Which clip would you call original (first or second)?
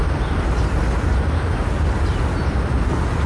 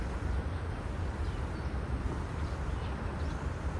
first